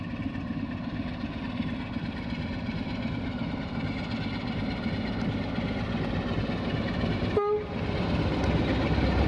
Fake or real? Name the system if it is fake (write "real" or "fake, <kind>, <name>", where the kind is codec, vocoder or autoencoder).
real